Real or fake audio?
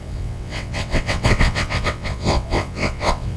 fake